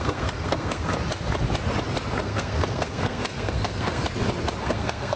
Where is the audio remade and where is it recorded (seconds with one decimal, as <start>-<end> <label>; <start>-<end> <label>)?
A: 0.0-0.9 remade; 0.9-2.2 recorded; 2.2-4.0 remade; 4.0-4.6 recorded; 4.6-5.2 remade